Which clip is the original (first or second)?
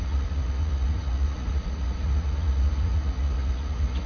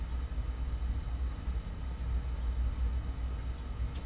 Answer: second